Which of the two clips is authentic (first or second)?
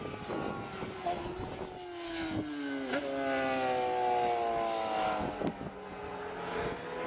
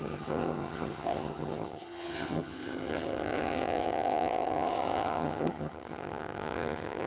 first